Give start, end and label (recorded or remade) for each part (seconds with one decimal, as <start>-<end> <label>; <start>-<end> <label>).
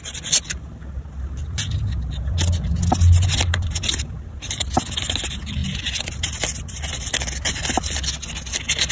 0.0-8.9 recorded